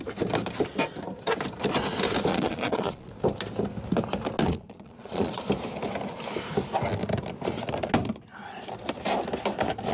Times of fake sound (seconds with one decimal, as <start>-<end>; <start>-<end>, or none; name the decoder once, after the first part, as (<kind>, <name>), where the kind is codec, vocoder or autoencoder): 2.3-3.1 (vocoder, Vocos); 4.4-5.5